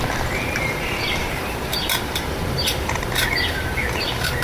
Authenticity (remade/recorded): remade